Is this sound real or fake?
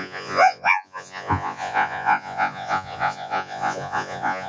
fake